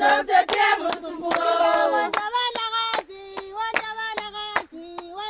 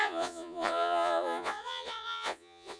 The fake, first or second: second